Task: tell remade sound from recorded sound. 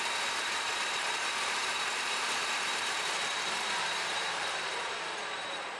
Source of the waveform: remade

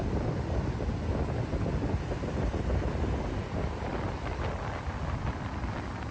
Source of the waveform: recorded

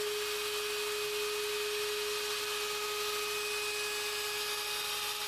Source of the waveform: recorded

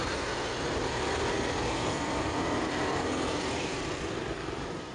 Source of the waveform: remade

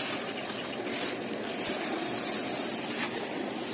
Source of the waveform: recorded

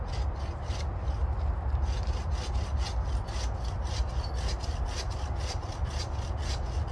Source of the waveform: recorded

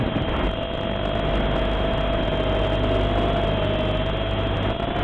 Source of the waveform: recorded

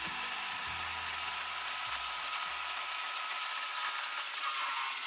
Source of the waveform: recorded